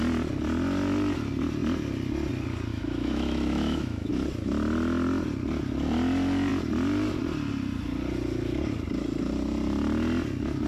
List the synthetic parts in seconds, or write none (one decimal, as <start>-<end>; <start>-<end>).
2.7-4.1